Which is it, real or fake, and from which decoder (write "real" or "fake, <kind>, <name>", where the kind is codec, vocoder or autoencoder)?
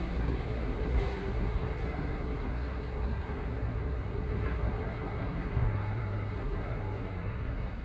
fake, codec, SNAC